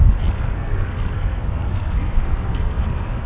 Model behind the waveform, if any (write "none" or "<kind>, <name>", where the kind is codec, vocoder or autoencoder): codec, SNAC